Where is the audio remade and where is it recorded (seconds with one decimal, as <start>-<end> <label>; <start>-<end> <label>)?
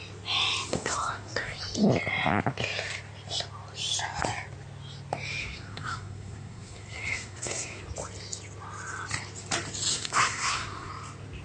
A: 0.0-0.7 recorded; 0.7-1.6 remade; 1.6-5.4 recorded; 5.4-7.8 remade; 7.8-9.9 recorded; 9.9-10.9 remade; 10.9-11.4 recorded